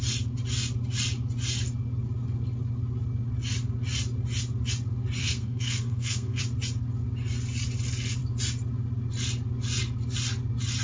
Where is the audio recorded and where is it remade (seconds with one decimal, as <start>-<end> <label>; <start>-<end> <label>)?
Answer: 0.0-5.2 recorded; 5.2-6.4 remade; 6.4-10.8 recorded